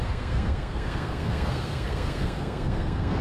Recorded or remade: remade